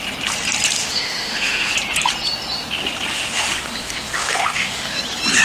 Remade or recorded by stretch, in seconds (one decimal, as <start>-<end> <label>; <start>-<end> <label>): 0.0-0.8 recorded; 0.8-1.7 remade; 1.7-3.1 recorded; 3.1-5.0 remade; 5.0-5.4 recorded